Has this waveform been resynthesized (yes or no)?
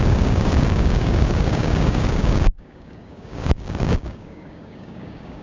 yes